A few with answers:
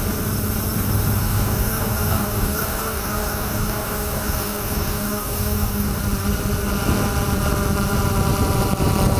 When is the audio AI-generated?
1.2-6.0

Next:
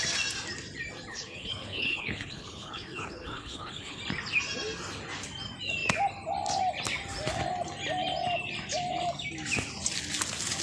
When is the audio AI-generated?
1.1-4.0